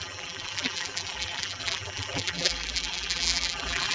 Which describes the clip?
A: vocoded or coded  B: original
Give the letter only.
A